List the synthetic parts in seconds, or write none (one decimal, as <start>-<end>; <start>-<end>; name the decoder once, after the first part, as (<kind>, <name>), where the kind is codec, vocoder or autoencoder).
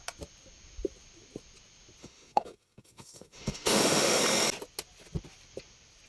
2.0-4.2 (autoencoder, DAC-VAE)